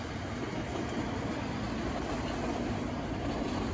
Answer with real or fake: real